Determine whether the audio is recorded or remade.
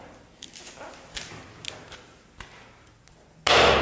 recorded